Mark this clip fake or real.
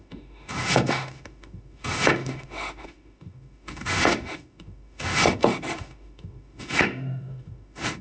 fake